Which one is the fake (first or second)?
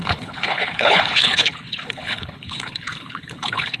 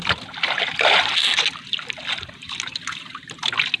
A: first